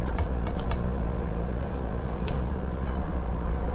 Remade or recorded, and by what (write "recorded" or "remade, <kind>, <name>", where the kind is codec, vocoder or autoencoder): remade, vocoder, Vocos